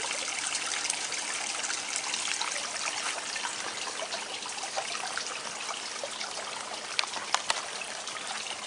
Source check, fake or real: real